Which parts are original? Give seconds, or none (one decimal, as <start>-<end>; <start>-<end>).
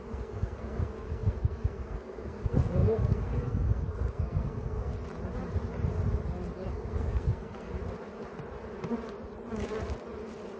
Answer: 4.9-6.7; 7.7-10.6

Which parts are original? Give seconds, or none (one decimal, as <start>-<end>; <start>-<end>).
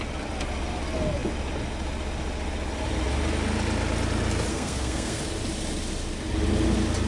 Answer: 0.0-4.5; 5.2-7.1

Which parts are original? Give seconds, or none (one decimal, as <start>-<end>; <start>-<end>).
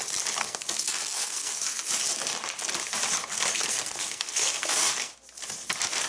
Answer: 0.0-0.4; 1.9-3.3; 5.1-6.1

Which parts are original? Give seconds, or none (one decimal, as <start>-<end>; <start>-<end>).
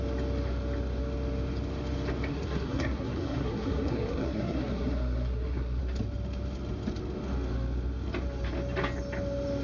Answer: 0.0-2.3; 5.8-9.6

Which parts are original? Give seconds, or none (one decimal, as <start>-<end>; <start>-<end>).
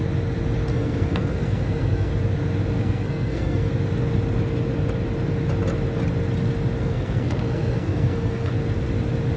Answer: 0.0-0.7; 2.1-2.8; 3.7-6.8; 8.5-9.4